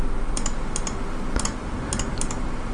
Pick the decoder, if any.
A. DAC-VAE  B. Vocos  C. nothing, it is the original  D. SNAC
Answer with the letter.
C